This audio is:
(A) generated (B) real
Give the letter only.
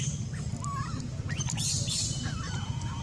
B